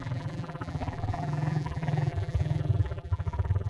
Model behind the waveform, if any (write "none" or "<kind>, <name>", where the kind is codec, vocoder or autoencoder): vocoder, BigVGAN v2